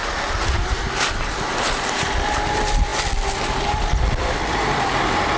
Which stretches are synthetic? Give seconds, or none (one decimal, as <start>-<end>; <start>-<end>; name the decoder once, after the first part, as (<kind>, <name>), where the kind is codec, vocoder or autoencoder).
2.3-2.9 (vocoder, BigVGAN v2); 3.6-5.4